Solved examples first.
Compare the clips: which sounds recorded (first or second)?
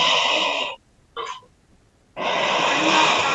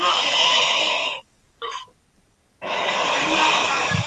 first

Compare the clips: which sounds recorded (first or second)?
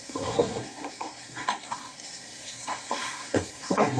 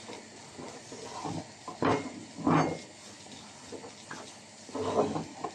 second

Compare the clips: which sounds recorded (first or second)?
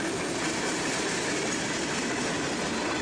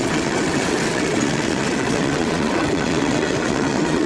first